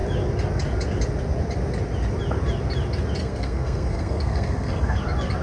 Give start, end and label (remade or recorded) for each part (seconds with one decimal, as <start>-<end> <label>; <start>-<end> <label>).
0.0-3.2 recorded; 3.2-5.0 remade; 5.0-5.4 recorded